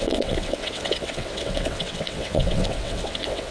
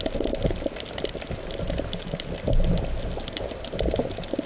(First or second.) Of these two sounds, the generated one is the first